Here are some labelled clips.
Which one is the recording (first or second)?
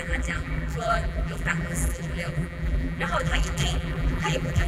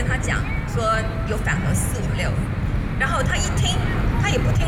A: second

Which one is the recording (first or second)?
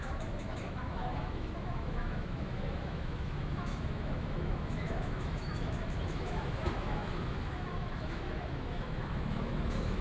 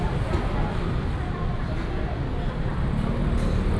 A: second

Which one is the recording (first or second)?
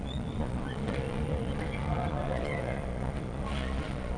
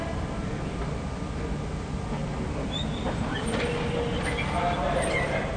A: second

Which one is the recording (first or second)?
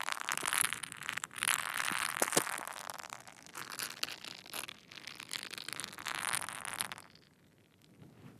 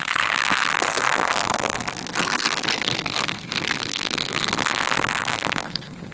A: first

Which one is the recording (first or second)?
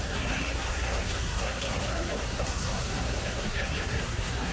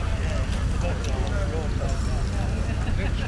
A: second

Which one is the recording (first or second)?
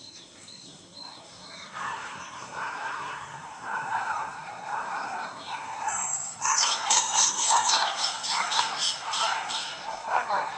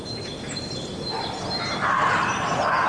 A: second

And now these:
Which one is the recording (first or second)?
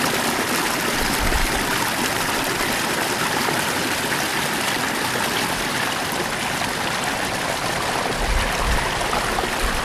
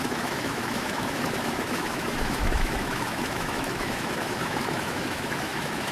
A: first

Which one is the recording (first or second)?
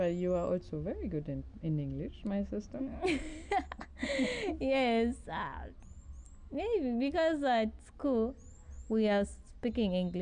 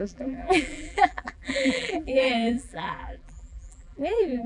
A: first